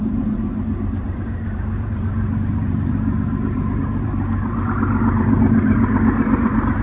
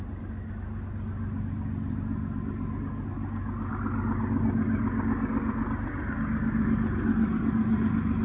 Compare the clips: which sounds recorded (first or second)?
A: second